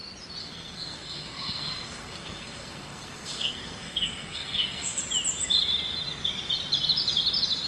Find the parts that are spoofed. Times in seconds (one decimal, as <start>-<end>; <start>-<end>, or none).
0.4-5.0